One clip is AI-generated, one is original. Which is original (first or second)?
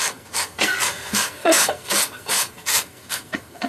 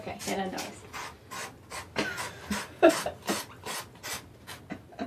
second